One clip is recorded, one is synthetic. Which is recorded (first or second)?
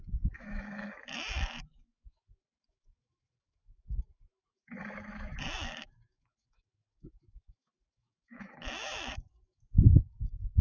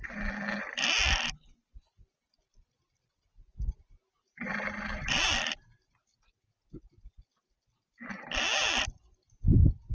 second